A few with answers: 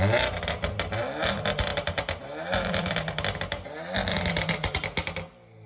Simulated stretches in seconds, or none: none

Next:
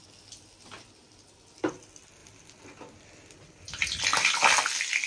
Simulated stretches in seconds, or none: none

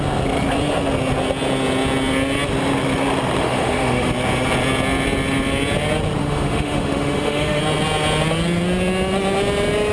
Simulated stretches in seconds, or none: 3.4-4.1 (autoencoder, DAC-VAE); 6.2-7.6

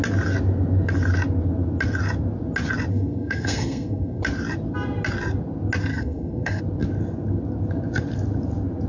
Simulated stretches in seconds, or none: 2.9-4.2 (codec, SNAC); 5.9-6.6

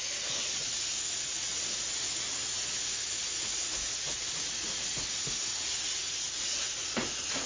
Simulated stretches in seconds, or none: 0.0-7.5 (vocoder, Vocos)

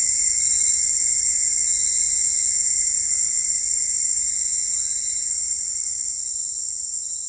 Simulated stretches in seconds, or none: 0.0-1.3 (vocoder, BigVGAN v2); 2.7-4.2; 5.3-7.3